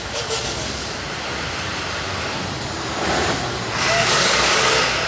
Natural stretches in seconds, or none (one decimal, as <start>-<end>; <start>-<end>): 0.8-3.9